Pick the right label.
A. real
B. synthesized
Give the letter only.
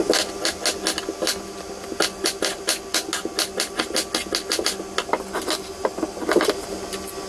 A